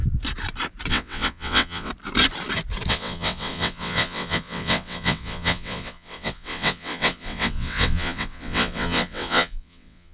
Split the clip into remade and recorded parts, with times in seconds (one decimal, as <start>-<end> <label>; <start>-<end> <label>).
0.0-0.9 recorded; 0.9-1.9 remade; 1.9-2.9 recorded; 2.9-10.1 remade